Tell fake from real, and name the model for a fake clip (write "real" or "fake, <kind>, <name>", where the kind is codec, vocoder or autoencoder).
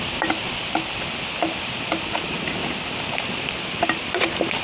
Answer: real